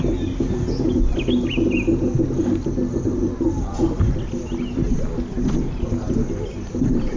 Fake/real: real